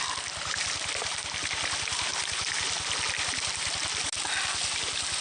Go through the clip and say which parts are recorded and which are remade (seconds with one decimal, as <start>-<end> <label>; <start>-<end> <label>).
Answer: 0.0-5.2 recorded